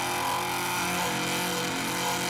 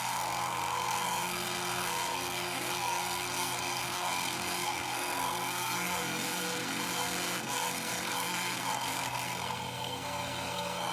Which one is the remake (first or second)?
second